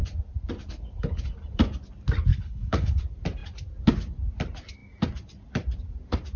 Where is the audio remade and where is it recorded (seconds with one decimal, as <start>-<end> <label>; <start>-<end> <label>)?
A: 0.0-2.3 recorded; 2.3-3.0 remade; 3.0-6.4 recorded